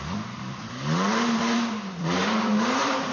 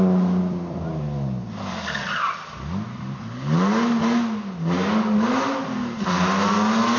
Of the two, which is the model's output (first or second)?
first